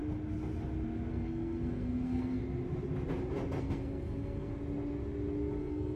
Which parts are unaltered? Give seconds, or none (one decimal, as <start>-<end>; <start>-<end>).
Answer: 0.0-1.1; 2.4-3.6; 4.5-5.6